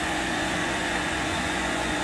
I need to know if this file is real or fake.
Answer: fake